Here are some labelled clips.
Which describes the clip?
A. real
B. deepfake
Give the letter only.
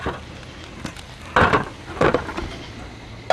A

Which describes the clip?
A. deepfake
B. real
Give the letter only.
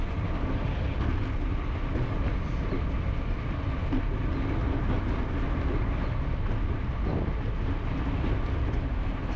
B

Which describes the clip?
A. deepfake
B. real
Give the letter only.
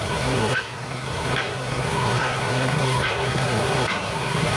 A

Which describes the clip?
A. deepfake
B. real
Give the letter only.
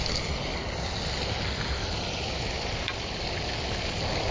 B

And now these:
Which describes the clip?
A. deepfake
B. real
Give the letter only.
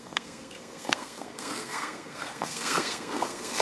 A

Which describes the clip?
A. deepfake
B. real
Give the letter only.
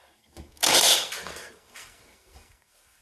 A